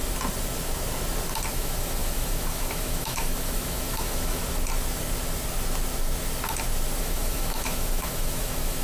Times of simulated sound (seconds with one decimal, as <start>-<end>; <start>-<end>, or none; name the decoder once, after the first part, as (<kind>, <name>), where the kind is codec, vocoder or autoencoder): 1.5-4.4 (autoencoder, DAC-VAE); 7.0-8.8